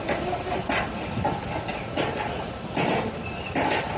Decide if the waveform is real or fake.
real